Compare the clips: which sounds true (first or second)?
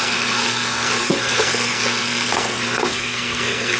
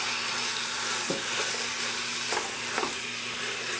second